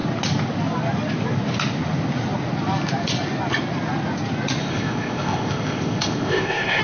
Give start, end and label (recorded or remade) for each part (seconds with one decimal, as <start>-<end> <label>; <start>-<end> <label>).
0.0-4.6 recorded; 4.6-6.8 remade